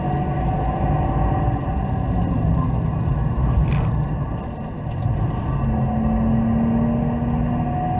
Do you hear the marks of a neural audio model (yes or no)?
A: no